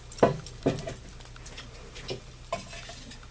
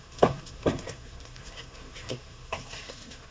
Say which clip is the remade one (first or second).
second